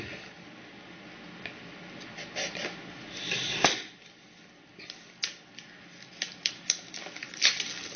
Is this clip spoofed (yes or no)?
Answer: no